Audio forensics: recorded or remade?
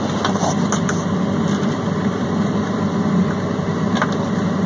remade